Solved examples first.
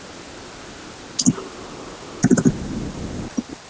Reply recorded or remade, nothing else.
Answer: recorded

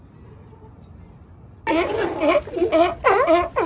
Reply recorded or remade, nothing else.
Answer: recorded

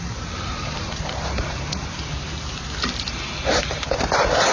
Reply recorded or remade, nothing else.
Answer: remade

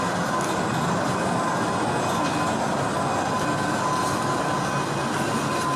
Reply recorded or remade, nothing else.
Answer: recorded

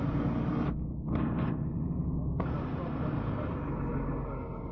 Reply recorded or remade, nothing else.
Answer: recorded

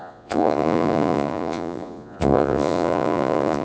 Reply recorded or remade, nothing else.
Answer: remade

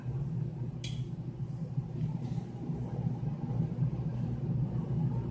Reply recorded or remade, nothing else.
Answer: recorded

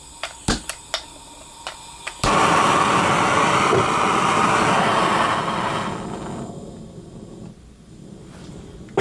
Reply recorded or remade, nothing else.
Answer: recorded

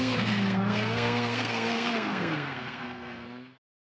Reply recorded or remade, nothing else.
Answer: remade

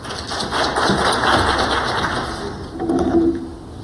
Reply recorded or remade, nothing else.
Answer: recorded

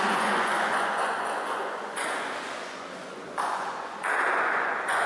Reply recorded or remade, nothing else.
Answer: remade